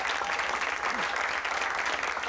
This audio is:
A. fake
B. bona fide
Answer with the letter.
B